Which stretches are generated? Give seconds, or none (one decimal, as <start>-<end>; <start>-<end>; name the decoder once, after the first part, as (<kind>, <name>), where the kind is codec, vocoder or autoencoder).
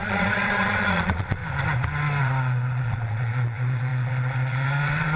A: 0.0-1.4 (vocoder, Vocos); 2.2-5.2